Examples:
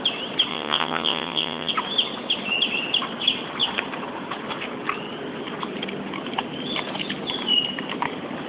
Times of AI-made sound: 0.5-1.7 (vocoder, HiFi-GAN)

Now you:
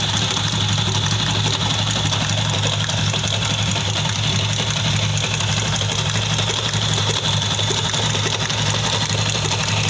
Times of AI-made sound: none

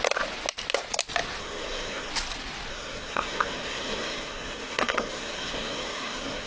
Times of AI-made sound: 1.4-2.1 (codec, SNAC); 2.7-6.5

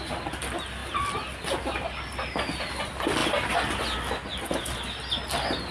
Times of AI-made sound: none

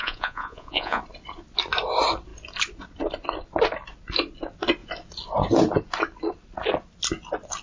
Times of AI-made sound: 0.0-1.0 (vocoder, Vocos)

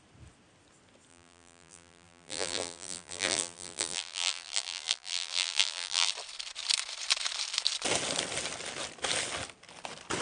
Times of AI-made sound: 1.1-6.1 (vocoder, BigVGAN v2)